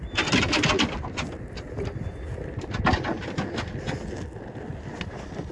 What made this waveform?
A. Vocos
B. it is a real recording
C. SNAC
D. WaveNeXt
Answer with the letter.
B